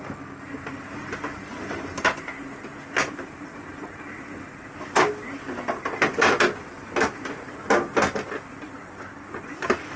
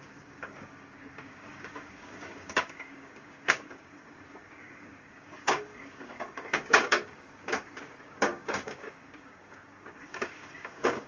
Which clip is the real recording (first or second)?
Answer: first